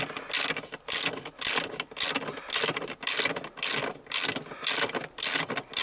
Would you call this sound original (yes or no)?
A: yes